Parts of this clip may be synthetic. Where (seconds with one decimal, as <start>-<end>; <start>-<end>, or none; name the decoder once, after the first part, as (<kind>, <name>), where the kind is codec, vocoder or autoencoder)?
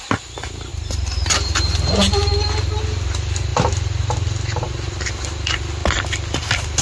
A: 3.5-5.1 (vocoder, BigVGAN v2); 5.8-6.8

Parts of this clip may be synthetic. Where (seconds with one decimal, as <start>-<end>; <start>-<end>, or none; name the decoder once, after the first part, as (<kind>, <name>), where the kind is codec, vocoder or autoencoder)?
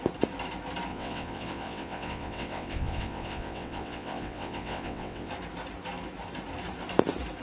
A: 0.9-5.3 (vocoder, WaveNeXt)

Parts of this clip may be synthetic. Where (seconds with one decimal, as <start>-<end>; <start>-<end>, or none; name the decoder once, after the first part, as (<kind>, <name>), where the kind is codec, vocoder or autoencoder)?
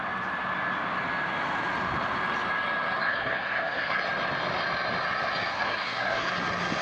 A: 3.0-4.0 (codec, SNAC); 5.5-6.3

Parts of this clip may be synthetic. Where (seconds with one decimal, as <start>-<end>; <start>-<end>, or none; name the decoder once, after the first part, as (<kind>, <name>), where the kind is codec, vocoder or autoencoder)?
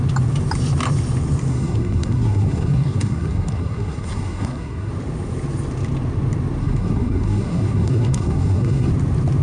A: 1.5-4.9 (codec, SNAC); 6.6-8.9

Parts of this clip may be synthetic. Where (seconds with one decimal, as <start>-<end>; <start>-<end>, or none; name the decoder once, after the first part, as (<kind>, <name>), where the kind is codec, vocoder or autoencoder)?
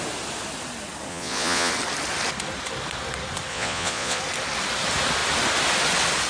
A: 1.1-1.7 (vocoder, Vocos); 3.5-4.2